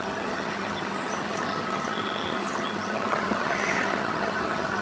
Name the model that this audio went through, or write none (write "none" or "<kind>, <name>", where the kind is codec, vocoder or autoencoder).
vocoder, HiFi-GAN